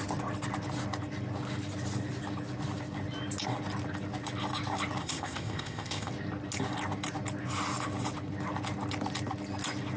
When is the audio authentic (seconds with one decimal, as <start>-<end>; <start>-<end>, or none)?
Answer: 0.0-5.0; 6.1-10.0